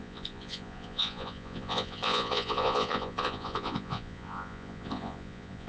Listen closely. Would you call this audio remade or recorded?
remade